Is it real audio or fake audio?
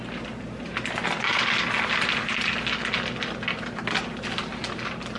real